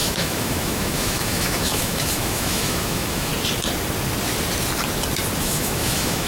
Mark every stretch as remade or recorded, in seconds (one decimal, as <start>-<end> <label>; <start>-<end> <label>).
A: 0.0-3.3 remade; 3.3-5.4 recorded; 5.4-6.3 remade